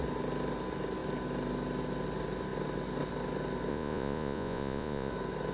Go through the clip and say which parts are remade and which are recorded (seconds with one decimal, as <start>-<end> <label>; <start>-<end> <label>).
0.0-3.7 recorded; 3.7-5.1 remade; 5.1-5.5 recorded